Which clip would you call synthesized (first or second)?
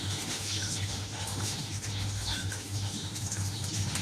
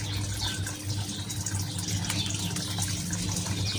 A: first